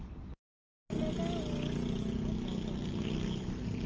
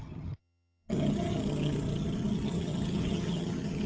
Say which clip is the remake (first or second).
second